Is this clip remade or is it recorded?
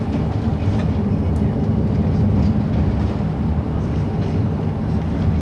recorded